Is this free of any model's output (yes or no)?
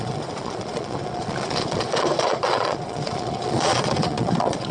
no